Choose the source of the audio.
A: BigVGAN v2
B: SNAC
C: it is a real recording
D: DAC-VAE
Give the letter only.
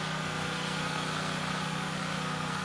B